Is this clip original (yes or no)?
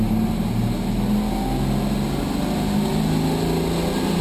yes